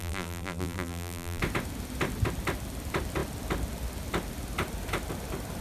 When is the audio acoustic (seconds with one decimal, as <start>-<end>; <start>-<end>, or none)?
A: 1.4-5.6